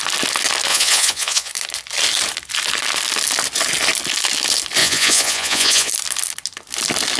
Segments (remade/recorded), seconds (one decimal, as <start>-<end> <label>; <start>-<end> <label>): 0.0-0.7 recorded; 0.7-1.5 remade; 1.5-4.8 recorded; 4.8-5.9 remade; 5.9-7.2 recorded